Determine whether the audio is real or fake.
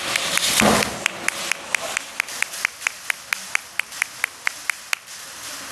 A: real